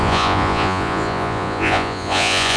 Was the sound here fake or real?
fake